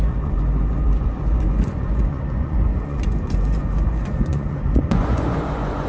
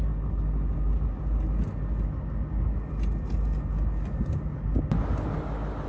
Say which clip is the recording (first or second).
second